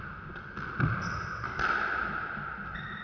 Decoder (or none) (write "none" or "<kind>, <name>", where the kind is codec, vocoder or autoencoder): none